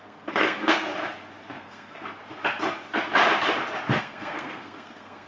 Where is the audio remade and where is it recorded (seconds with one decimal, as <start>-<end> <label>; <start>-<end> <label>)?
0.0-0.9 remade; 0.9-1.5 recorded; 1.5-2.2 remade; 2.2-4.0 recorded; 4.0-5.3 remade